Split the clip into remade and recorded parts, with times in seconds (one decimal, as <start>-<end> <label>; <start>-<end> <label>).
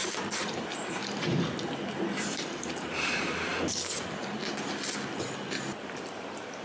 0.0-1.0 remade; 1.0-2.2 recorded; 2.2-3.5 remade; 3.5-5.8 recorded; 5.8-6.6 remade